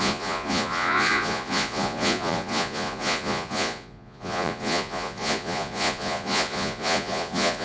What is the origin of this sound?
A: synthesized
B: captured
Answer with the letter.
A